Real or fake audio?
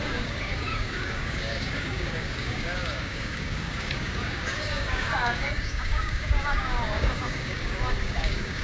fake